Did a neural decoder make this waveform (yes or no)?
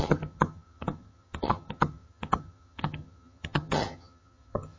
yes